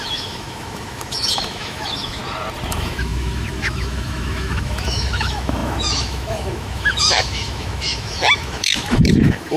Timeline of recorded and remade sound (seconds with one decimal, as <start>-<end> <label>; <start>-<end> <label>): 0.0-2.2 remade; 2.2-2.7 recorded; 2.7-9.6 remade